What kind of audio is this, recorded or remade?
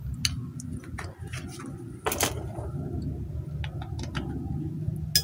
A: recorded